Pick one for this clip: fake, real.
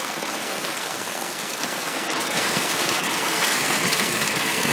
fake